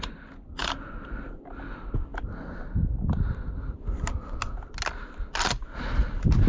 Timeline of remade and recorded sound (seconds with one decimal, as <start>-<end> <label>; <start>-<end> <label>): 0.0-6.5 recorded